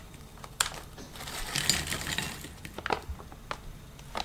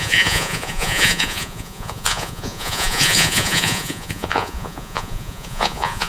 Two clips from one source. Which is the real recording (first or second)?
first